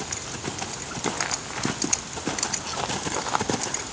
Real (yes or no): yes